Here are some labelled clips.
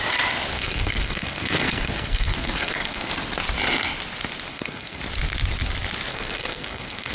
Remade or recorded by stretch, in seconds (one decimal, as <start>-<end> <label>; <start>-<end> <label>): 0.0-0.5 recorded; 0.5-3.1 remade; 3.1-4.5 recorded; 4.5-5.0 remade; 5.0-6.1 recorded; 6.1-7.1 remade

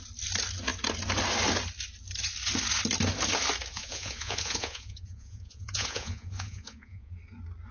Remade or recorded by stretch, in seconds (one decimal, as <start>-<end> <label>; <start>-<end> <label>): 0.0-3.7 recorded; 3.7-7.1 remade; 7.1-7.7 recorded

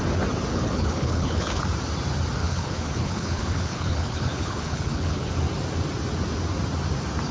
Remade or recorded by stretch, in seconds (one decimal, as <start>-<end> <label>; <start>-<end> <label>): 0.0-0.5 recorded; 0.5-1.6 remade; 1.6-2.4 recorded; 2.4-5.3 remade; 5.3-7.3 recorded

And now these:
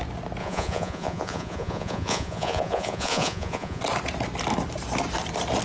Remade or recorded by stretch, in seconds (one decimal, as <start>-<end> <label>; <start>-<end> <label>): 0.0-0.4 recorded; 0.4-3.8 remade; 3.8-5.6 recorded